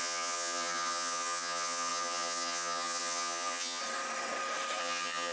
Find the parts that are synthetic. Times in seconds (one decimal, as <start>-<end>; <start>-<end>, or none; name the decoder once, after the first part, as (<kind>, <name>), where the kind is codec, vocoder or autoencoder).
0.0-3.8 (vocoder, HiFi-GAN); 4.8-5.3